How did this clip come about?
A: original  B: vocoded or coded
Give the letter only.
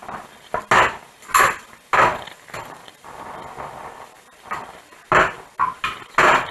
A